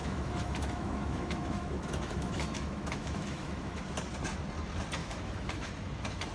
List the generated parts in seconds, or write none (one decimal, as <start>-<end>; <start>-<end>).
0.0-3.8; 5.0-5.7